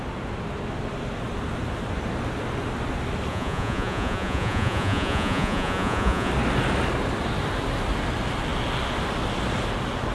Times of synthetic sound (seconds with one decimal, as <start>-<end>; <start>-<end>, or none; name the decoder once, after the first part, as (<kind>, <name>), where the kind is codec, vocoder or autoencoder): 3.3-6.3 (vocoder, Vocos)

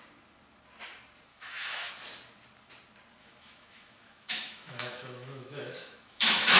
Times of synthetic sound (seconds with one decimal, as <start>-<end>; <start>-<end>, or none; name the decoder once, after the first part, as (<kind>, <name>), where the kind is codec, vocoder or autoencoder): 1.3-1.9 (autoencoder, DAC-VAE); 3.2-6.6

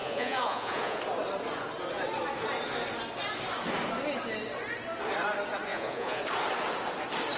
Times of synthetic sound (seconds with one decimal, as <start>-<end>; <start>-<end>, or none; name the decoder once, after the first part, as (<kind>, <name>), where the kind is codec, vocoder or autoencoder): 0.0-1.0 (vocoder, Vocos); 5.7-6.2

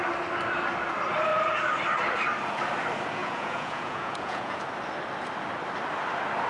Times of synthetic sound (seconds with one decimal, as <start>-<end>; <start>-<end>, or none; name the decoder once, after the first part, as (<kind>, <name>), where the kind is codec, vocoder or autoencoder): 3.2-4.6 (vocoder, Vocos)

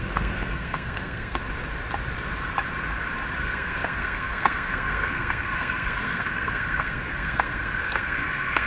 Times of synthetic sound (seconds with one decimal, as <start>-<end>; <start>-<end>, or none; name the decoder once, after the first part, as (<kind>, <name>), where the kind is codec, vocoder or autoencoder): 0.0-1.4 (codec, SNAC); 3.4-8.7

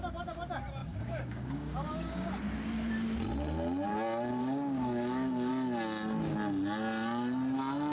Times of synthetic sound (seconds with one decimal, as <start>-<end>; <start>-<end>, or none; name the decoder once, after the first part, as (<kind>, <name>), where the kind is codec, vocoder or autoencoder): 0.8-2.4 (codec, DAC); 4.4-5.5